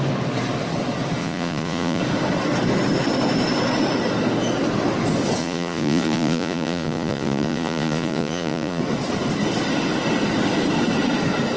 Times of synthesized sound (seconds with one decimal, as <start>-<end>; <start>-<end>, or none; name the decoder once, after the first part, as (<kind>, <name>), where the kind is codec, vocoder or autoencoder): 1.2-2.0 (vocoder, Vocos); 5.4-8.8